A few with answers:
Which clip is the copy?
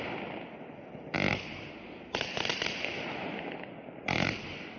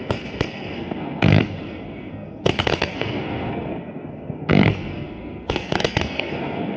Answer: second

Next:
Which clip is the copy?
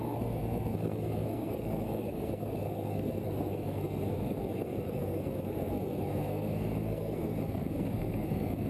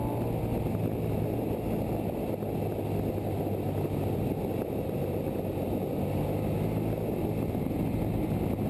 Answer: first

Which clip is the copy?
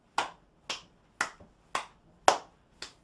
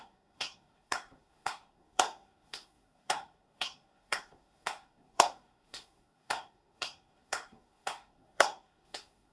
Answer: second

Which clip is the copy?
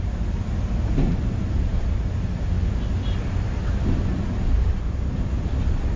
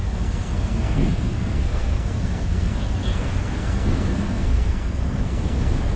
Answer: second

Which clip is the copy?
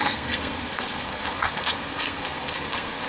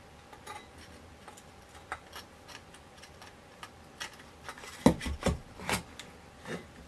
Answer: first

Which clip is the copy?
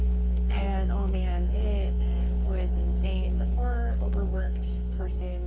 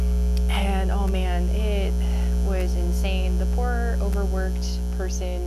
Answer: first